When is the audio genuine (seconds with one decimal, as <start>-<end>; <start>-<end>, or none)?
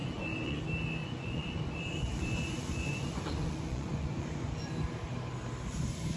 0.6-1.0; 4.7-6.2